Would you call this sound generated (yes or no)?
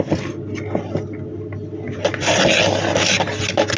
no